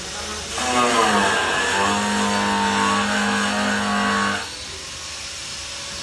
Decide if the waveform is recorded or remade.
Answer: recorded